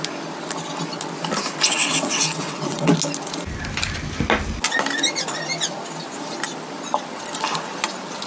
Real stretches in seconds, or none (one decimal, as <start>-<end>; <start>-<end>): 0.0-1.7; 2.9-8.3